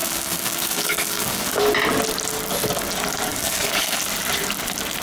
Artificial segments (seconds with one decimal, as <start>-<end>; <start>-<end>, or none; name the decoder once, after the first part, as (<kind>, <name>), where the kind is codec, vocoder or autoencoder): 0.0-1.6 (codec, DAC); 3.3-4.0